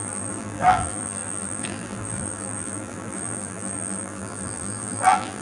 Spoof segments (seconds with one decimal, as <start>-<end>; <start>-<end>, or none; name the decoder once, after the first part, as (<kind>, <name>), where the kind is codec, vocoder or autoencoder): 0.0-5.4 (vocoder, BigVGAN v2)